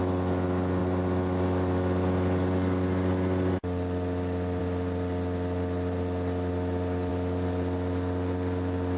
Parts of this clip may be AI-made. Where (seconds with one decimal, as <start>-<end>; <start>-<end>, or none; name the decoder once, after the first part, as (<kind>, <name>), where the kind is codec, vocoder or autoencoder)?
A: none